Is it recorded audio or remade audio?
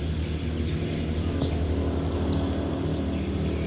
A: recorded